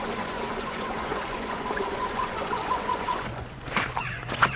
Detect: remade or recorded remade